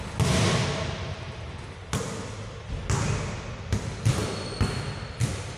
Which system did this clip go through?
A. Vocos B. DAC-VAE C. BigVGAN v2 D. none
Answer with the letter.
D